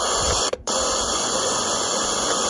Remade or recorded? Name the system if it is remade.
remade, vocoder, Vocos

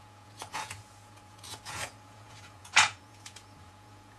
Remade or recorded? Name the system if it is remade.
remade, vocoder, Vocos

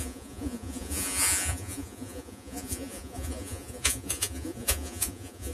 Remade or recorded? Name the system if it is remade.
remade, vocoder, Vocos